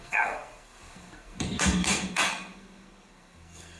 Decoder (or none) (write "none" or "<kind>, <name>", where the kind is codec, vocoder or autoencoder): codec, SNAC